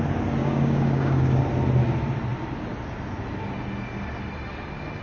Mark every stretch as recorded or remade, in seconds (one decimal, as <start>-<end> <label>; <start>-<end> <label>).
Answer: 0.0-0.4 recorded; 0.4-1.4 remade; 1.4-5.0 recorded